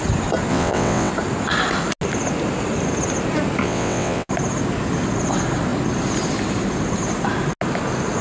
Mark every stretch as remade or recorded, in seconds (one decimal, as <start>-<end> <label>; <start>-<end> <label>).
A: 0.0-0.5 recorded; 0.5-1.1 remade; 1.1-3.6 recorded; 3.6-4.3 remade; 4.3-8.2 recorded